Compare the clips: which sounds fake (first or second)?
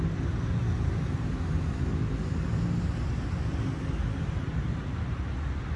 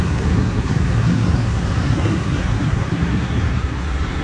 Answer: second